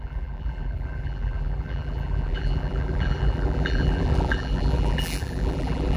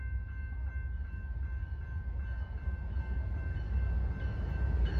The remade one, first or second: first